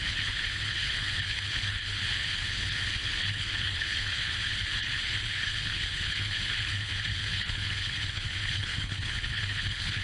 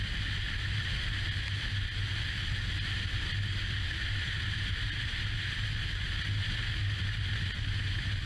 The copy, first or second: first